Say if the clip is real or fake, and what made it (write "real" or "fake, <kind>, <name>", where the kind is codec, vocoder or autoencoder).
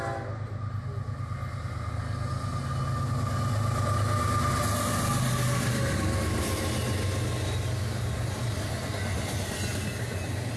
real